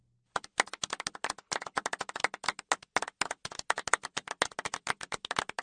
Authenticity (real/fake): real